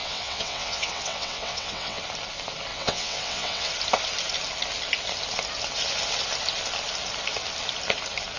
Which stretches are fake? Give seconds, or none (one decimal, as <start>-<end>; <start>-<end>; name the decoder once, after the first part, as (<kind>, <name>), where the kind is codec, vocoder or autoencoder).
0.0-2.0 (vocoder, WaveNeXt); 2.7-3.7